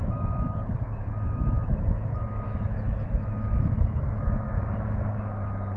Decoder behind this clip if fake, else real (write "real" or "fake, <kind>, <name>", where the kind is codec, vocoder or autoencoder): fake, autoencoder, DAC-VAE